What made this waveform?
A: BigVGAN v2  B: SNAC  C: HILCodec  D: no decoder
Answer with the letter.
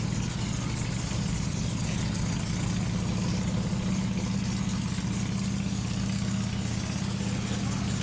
D